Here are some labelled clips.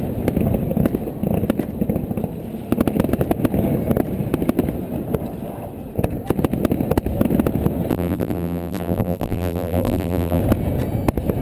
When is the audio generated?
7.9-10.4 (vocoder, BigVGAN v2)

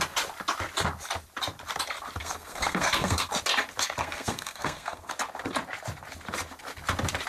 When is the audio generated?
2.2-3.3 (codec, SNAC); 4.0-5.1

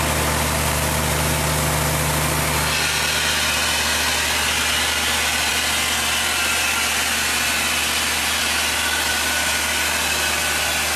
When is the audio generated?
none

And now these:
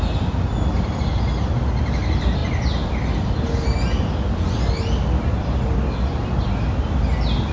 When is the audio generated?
none

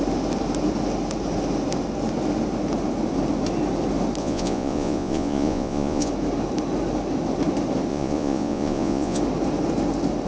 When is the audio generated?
4.2-6.1 (vocoder, Vocos); 7.9-9.2

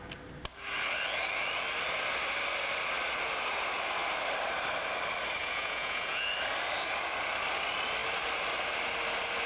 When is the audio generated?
5.4-6.3 (vocoder, Vocos)

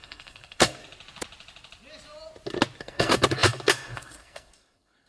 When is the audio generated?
0.0-0.8 (codec, SNAC); 2.8-5.1

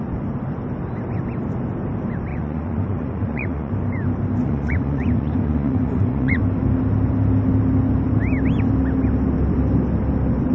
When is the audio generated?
2.3-3.7 (vocoder, Vocos); 4.4-6.4